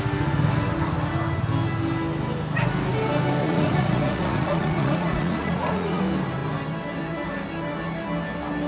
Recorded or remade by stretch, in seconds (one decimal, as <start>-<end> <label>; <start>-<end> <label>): 0.0-3.4 recorded; 3.4-6.0 remade; 6.0-8.7 recorded